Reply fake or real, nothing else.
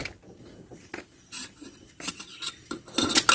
real